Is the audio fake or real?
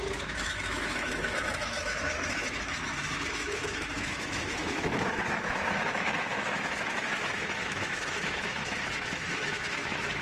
fake